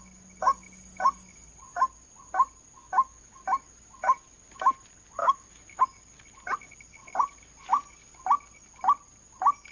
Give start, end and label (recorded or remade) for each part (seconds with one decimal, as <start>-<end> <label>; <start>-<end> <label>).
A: 0.0-2.8 recorded; 2.8-3.4 remade; 3.4-5.2 recorded; 5.2-5.8 remade; 5.8-9.7 recorded

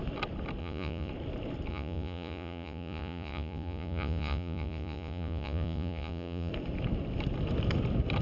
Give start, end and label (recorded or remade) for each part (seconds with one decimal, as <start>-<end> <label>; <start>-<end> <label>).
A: 0.0-0.6 recorded; 0.6-1.1 remade; 1.1-1.7 recorded; 1.7-6.5 remade; 6.5-8.2 recorded

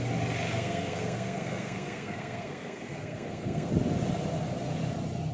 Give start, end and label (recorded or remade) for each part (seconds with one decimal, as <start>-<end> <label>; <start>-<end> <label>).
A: 0.0-0.5 recorded; 0.5-3.7 remade; 3.7-5.3 recorded